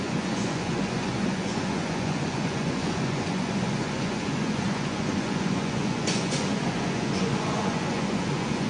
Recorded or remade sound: remade